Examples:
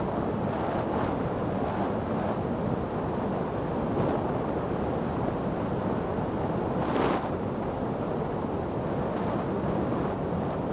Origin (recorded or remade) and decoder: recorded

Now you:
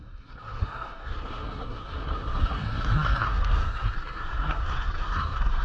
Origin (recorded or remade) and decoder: remade, codec, SNAC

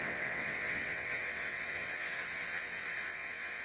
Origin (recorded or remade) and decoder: remade, vocoder, WaveNeXt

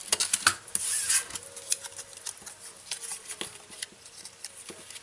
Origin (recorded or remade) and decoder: recorded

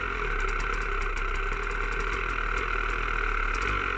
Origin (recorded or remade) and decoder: recorded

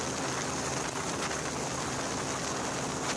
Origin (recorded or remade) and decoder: recorded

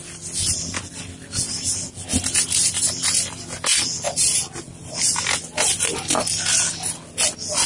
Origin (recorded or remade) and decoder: recorded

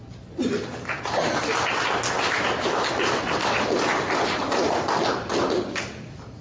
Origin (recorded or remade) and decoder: recorded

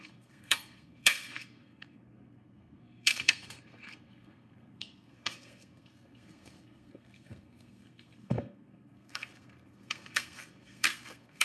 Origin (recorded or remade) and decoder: remade, codec, SNAC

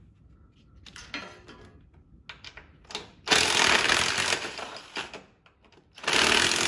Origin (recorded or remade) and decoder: recorded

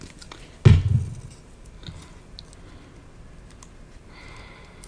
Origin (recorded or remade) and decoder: recorded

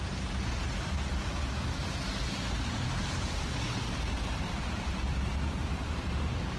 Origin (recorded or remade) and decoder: remade, vocoder, BigVGAN v2